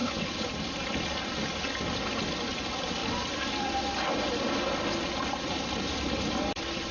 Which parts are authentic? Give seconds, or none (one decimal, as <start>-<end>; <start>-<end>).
0.5-6.9